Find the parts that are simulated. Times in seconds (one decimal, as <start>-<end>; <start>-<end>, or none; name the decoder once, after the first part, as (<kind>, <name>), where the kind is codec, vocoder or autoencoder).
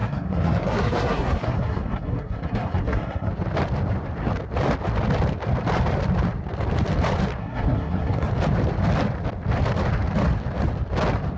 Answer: 0.0-3.3 (codec, SNAC); 7.4-8.3